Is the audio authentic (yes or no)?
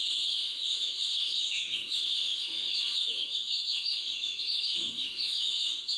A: no